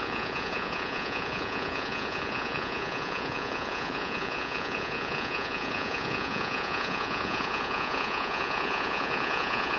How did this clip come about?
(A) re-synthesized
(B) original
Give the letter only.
A